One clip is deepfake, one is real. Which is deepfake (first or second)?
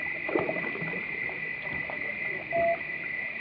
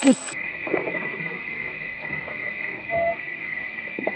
second